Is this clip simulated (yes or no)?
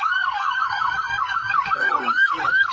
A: yes